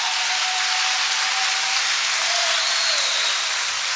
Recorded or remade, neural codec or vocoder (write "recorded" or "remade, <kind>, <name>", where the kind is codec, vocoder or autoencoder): remade, vocoder, BigVGAN v2